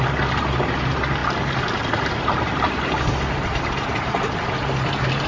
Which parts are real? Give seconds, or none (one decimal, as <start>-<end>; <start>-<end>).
0.0-5.3